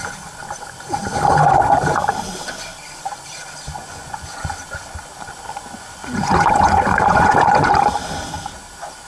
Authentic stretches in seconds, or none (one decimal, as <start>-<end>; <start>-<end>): 0.0-3.8; 4.5-5.5; 7.7-9.1

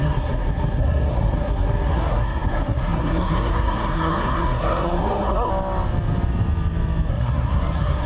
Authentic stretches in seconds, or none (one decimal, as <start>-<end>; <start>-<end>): 5.5-7.1

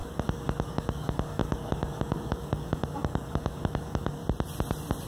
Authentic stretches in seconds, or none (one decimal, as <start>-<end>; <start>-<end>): 4.2-5.1

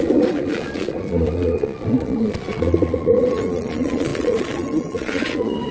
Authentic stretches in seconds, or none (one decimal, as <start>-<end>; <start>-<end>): none